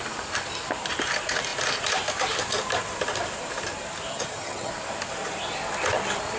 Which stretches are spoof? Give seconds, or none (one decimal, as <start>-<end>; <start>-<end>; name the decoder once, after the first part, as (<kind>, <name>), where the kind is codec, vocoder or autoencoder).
4.1-4.7 (vocoder, HiFi-GAN)